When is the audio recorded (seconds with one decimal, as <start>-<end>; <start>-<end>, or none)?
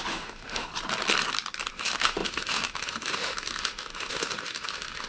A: 0.7-1.7